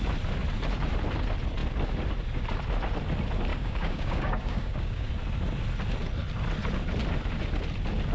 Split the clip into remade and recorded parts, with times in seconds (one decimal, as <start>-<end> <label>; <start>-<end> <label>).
0.0-3.5 recorded; 3.5-5.1 remade; 5.1-8.1 recorded